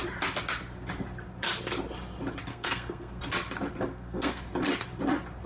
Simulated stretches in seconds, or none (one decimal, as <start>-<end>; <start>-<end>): 2.5-3.2; 3.9-4.4